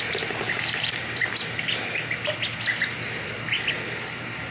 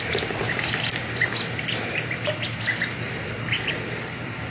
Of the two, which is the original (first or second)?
first